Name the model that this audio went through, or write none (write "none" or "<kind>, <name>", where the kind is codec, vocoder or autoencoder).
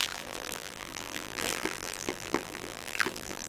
vocoder, BigVGAN v2